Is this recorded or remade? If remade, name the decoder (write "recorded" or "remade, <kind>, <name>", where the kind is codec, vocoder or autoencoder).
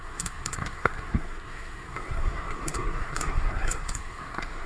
remade, codec, SNAC